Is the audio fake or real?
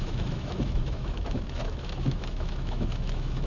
fake